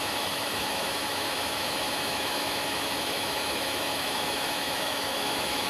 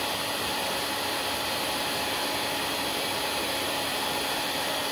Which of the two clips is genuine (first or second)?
second